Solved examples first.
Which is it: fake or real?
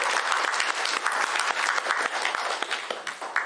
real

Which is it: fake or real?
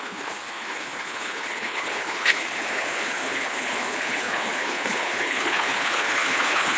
fake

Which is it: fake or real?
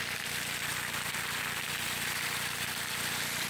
fake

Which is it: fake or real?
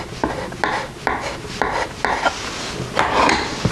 real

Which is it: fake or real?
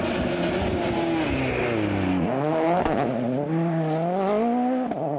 real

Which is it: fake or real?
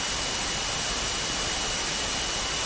real